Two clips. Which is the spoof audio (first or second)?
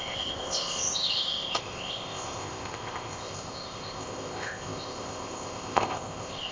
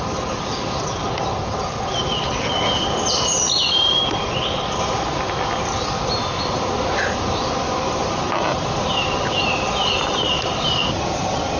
first